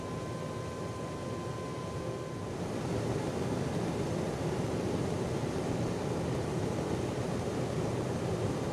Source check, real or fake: real